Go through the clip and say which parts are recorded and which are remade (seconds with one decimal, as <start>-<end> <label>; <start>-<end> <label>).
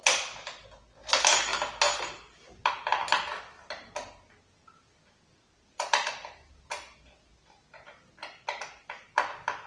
0.0-5.3 recorded; 5.3-7.3 remade; 7.3-9.7 recorded